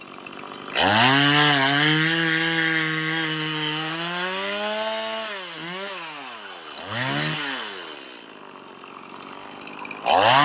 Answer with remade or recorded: recorded